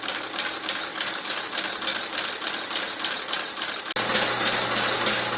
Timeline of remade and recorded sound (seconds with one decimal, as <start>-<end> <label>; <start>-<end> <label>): 0.0-0.9 recorded; 0.9-1.4 remade; 1.4-5.4 recorded